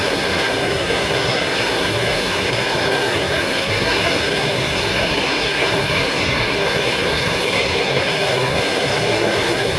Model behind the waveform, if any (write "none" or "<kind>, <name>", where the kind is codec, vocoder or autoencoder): codec, SNAC